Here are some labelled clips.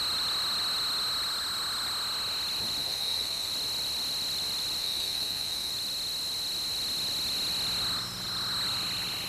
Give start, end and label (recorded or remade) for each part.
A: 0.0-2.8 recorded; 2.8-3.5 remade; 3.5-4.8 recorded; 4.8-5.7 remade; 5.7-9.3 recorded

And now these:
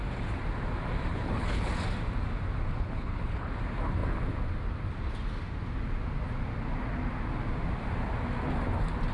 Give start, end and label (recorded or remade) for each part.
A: 0.0-1.1 recorded; 1.1-1.7 remade; 1.7-2.7 recorded; 2.7-3.5 remade; 3.5-9.1 recorded